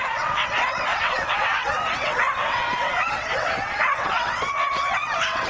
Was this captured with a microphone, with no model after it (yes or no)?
no